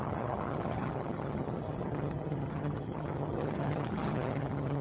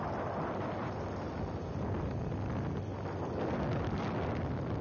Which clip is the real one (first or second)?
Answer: second